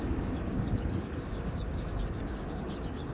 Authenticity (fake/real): fake